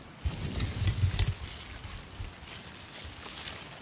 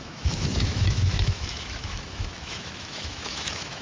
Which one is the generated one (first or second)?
second